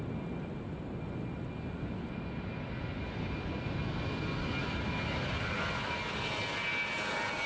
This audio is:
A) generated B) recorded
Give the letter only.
B